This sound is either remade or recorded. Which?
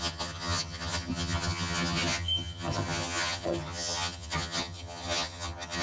remade